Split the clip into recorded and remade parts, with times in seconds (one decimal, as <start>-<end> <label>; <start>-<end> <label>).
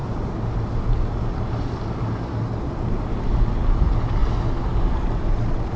0.0-5.8 recorded